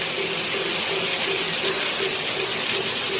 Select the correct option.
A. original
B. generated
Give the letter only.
A